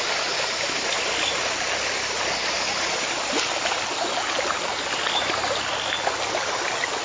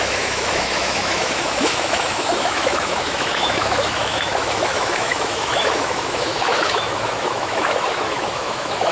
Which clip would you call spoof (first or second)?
second